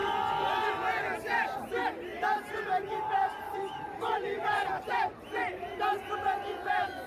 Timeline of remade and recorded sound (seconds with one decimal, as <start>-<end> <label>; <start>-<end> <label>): 0.0-2.1 recorded; 2.1-6.1 remade; 6.1-7.1 recorded